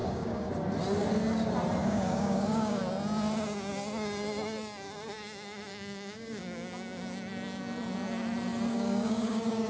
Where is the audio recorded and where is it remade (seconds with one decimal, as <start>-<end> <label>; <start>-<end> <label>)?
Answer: 0.0-0.5 remade; 0.5-1.8 recorded; 1.8-2.8 remade; 2.8-5.7 recorded; 5.7-6.4 remade; 6.4-8.7 recorded; 8.7-9.7 remade